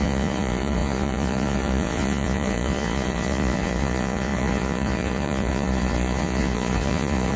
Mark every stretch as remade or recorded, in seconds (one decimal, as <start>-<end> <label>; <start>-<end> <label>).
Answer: 0.0-7.4 remade